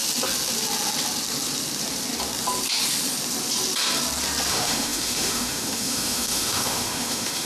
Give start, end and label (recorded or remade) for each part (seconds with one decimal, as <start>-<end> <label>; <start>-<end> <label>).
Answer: 0.0-4.5 recorded; 4.5-7.5 remade